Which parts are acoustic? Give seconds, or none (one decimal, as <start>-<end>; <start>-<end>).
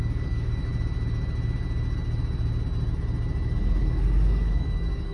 0.7-3.8